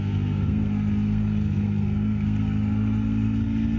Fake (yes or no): yes